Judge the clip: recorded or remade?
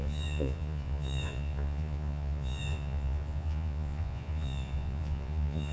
remade